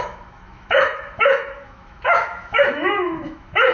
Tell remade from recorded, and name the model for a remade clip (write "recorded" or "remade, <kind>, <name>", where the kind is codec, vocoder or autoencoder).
remade, autoencoder, DAC-VAE